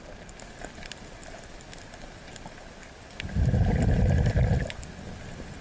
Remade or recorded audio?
recorded